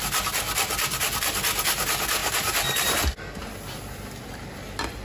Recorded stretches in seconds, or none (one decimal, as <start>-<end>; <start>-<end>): 0.0-2.2; 3.0-5.0